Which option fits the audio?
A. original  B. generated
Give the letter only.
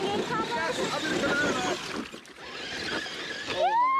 A